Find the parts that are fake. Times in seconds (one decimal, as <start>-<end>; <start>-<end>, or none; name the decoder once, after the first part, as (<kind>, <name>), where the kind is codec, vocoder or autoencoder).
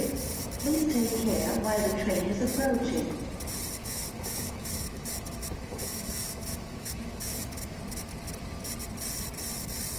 3.8-7.8 (autoencoder, DAC-VAE)